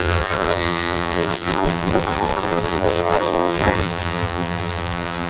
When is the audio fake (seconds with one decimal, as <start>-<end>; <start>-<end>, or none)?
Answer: 0.0-5.3

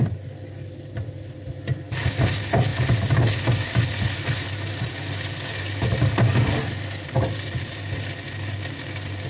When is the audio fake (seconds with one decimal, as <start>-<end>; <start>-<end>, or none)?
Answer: none

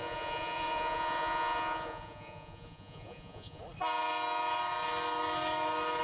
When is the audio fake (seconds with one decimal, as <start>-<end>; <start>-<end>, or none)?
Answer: 0.0-3.6